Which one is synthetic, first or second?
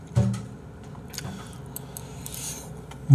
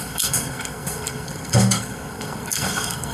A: second